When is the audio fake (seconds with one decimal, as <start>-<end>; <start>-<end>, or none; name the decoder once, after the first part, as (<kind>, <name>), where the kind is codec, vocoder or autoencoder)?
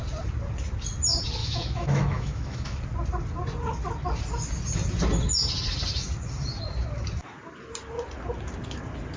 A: 1.4-2.8 (autoencoder, DAC-VAE)